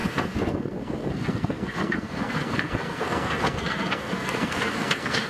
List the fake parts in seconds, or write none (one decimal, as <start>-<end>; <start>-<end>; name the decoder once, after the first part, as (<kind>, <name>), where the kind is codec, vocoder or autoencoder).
0.0-5.3 (codec, SNAC)